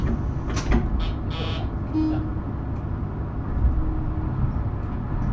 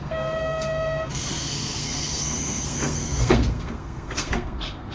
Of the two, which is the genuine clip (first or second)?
first